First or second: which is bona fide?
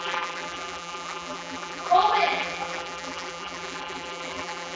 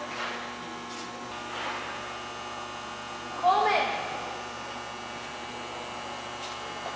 second